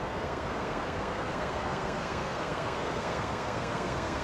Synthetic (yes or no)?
yes